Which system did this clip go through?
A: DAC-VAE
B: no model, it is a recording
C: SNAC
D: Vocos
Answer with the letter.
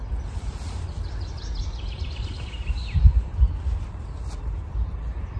B